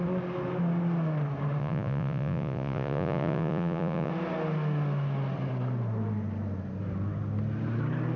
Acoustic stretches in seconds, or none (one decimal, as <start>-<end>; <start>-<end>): 0.0-1.6; 4.1-8.2